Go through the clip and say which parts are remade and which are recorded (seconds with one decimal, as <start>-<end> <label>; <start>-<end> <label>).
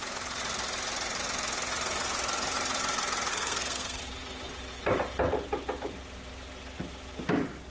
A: 0.0-3.3 recorded; 3.3-4.0 remade; 4.0-7.7 recorded